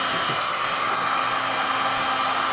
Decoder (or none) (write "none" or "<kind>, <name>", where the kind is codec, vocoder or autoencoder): none